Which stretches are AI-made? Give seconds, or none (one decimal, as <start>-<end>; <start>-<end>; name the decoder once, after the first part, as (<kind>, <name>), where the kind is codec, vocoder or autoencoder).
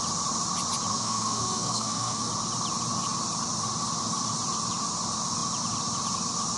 0.9-2.3 (codec, SNAC)